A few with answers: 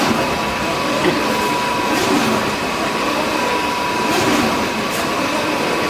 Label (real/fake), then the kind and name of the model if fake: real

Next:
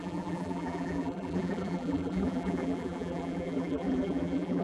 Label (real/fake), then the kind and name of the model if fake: fake, vocoder, BigVGAN v2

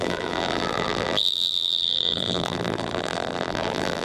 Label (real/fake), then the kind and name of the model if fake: fake, vocoder, BigVGAN v2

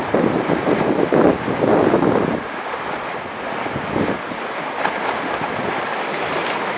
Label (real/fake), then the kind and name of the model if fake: real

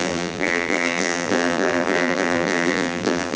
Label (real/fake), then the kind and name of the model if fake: fake, vocoder, BigVGAN v2